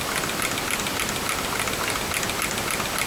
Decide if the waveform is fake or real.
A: real